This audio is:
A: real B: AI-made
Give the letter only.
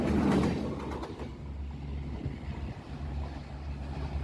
A